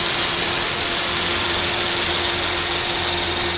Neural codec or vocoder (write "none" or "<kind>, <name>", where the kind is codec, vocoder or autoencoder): none